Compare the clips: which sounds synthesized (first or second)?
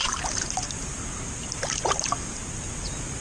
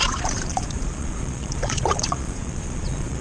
second